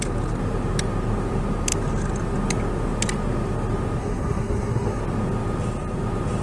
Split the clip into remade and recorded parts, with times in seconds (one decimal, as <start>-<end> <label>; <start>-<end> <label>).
0.0-4.0 recorded; 4.0-5.0 remade; 5.0-6.4 recorded